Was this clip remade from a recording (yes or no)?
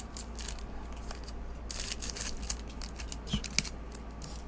no